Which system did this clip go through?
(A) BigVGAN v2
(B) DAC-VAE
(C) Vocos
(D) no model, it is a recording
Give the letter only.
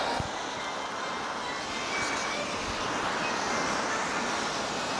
D